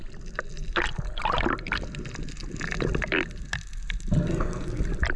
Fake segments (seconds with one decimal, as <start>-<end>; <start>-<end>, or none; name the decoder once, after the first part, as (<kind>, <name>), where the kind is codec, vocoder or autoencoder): 4.3-4.8 (codec, SNAC)